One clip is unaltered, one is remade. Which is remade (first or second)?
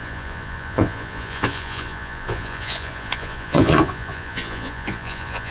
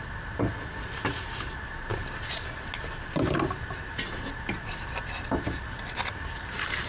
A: first